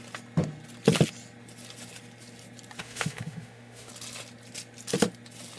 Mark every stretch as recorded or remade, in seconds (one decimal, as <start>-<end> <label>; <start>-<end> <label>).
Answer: 0.0-2.8 recorded; 2.8-3.9 remade; 3.9-5.6 recorded